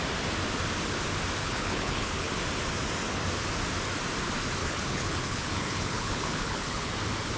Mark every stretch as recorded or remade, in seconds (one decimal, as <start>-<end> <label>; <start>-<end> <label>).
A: 0.0-1.4 recorded; 1.4-2.3 remade; 2.3-4.6 recorded; 4.6-6.9 remade; 6.9-7.4 recorded